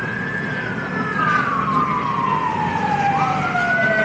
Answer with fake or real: real